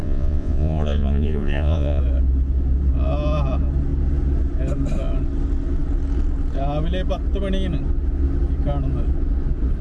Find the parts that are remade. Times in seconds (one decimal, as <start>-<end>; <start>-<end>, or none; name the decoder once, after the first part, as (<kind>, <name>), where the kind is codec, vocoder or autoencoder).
0.0-2.0 (vocoder, Vocos)